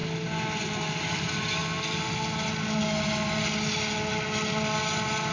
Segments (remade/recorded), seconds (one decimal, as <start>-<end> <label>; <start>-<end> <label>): 0.0-5.3 recorded